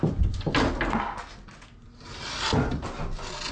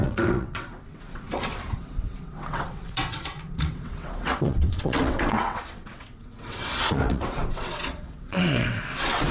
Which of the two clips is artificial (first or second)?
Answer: second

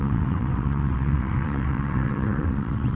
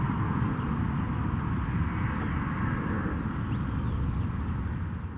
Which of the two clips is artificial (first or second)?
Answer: first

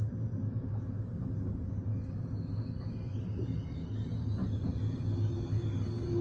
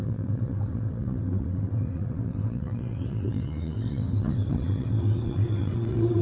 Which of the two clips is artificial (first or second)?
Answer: second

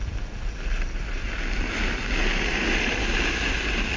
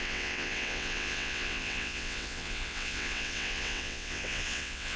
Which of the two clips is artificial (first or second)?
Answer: second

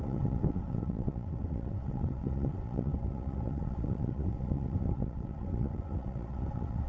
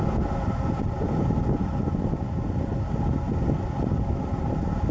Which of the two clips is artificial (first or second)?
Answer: first